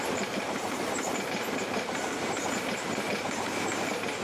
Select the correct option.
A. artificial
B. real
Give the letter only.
A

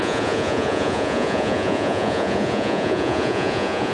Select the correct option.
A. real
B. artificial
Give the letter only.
B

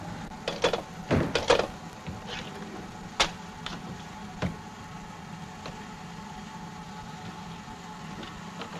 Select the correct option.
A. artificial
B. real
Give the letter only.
B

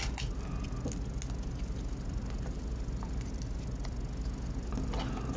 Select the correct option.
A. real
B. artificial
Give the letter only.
A